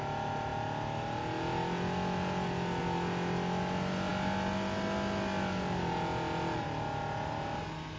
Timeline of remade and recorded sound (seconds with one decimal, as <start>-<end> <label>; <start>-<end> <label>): 0.0-8.0 recorded